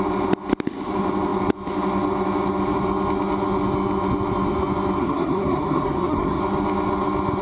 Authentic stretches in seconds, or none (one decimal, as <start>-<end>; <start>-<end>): 0.0-5.0; 6.4-7.4